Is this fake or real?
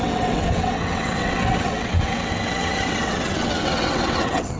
fake